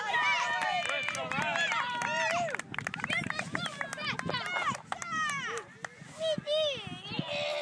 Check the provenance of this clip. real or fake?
real